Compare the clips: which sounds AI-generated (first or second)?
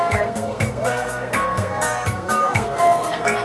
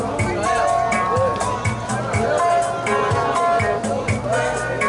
first